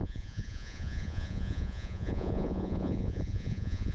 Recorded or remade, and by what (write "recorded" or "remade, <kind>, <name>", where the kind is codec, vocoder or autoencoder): remade, vocoder, Vocos